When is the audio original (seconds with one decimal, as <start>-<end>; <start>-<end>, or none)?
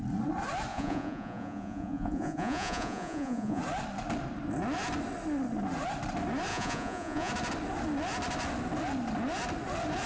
0.0-0.7; 3.6-6.5; 7.3-10.1